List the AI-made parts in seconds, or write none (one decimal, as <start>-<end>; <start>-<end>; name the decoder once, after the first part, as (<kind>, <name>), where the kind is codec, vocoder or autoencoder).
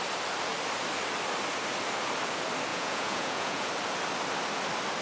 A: 2.7-3.7 (vocoder, Vocos)